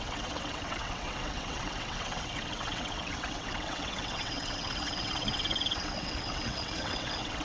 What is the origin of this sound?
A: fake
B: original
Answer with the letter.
A